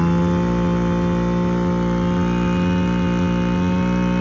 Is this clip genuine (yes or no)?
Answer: yes